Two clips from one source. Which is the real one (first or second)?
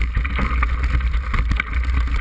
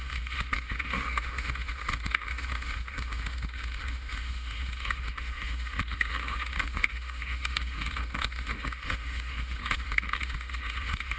first